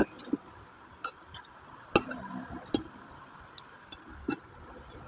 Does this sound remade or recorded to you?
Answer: recorded